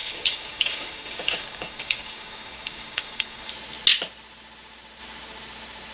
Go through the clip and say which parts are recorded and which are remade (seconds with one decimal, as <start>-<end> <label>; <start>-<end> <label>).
0.0-3.5 remade; 3.5-5.9 recorded